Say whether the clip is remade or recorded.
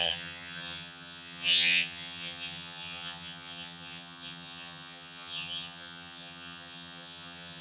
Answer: remade